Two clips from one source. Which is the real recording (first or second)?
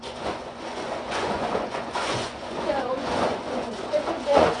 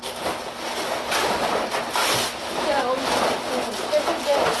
second